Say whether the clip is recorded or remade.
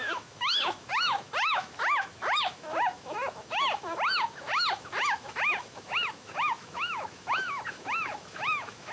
remade